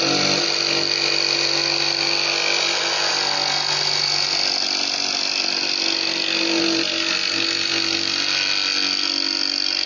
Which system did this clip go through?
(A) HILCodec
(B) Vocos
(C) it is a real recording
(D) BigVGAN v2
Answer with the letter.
C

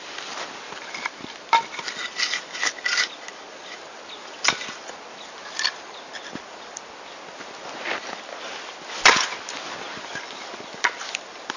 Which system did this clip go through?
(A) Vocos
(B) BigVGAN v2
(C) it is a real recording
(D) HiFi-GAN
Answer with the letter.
C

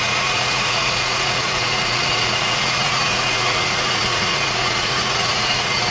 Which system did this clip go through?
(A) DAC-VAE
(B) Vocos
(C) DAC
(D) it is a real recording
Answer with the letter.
B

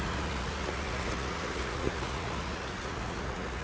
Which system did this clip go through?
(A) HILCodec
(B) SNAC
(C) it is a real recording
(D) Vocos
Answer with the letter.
D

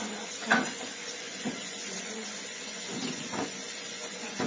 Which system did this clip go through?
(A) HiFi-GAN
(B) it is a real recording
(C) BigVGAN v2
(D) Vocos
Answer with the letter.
D